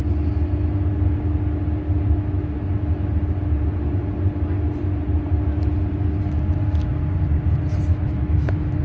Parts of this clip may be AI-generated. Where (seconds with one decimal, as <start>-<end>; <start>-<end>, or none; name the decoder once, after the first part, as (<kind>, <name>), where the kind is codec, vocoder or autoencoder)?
1.8-2.5 (autoencoder, DAC-VAE); 7.9-8.8